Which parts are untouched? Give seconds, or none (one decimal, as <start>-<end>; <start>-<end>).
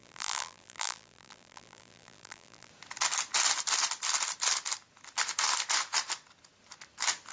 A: 2.7-7.3